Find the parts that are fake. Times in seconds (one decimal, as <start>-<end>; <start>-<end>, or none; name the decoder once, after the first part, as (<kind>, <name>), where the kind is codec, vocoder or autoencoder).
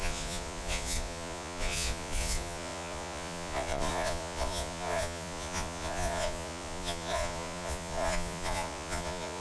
0.0-9.4 (vocoder, Vocos)